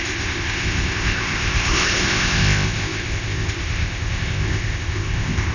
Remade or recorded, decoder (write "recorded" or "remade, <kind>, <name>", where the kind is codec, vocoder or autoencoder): remade, codec, ZipCodec